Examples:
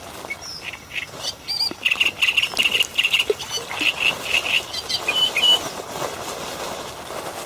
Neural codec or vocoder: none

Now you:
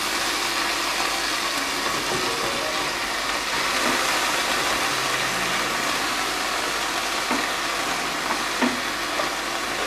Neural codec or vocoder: none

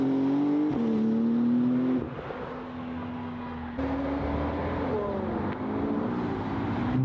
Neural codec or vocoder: none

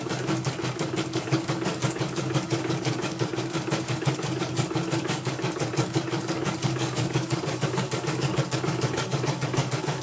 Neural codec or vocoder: codec, DAC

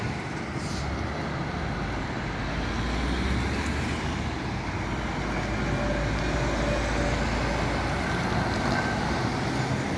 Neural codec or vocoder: none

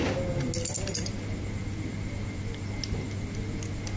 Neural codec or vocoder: none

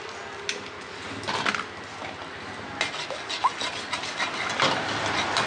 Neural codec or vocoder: none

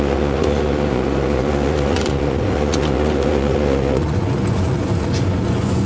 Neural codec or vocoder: vocoder, Vocos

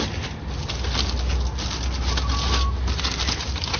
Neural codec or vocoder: none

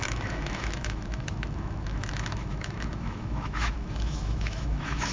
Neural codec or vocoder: autoencoder, DAC-VAE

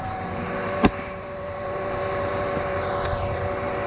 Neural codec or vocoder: vocoder, BigVGAN v2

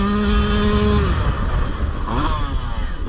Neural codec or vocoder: none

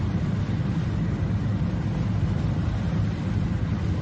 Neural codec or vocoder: none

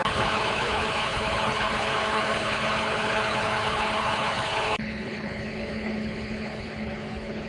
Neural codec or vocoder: codec, HILCodec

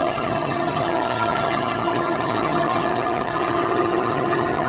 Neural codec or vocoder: vocoder, HiFi-GAN